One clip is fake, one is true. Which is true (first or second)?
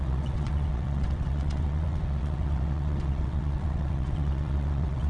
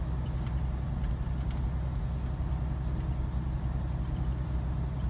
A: second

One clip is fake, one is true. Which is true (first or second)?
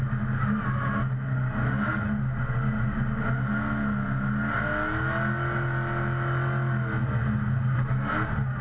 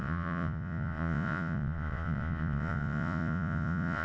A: first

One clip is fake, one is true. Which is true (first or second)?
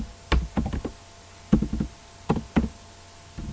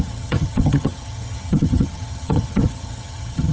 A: first